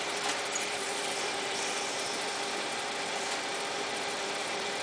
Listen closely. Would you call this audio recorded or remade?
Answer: remade